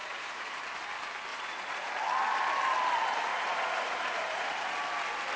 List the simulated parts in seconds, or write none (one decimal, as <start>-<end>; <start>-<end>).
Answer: 0.0-0.6; 1.3-1.9; 3.3-4.7